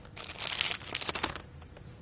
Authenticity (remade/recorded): recorded